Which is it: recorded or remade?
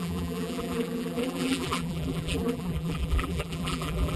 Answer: remade